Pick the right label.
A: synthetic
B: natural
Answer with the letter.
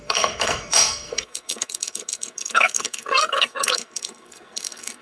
A